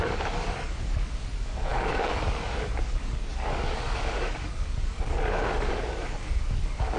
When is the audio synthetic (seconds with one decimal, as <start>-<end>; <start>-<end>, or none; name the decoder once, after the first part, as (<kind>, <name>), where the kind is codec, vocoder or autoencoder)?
0.0-7.0 (codec, DAC)